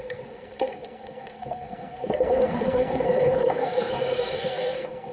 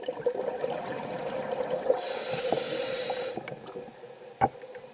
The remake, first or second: first